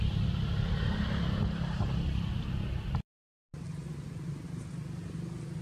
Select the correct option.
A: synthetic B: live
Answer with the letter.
B